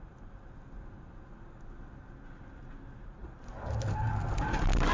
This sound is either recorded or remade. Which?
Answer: recorded